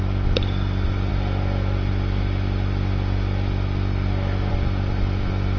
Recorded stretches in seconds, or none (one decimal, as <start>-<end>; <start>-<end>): 1.1-4.5